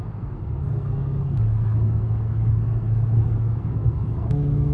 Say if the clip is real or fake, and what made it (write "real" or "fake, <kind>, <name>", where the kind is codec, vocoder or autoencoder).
fake, codec, SNAC